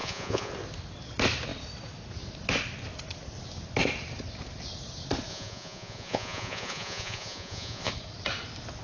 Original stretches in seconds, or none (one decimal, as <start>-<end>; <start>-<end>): 0.5-5.3; 7.9-8.8